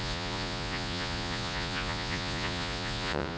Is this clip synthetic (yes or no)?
yes